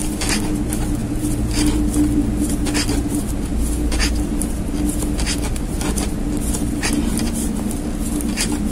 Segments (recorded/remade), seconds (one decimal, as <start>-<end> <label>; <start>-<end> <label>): 0.0-8.7 recorded